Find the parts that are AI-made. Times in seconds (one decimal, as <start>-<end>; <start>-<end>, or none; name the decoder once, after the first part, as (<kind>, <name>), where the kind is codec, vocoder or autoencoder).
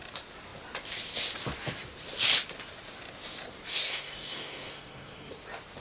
3.7-5.3 (codec, SNAC)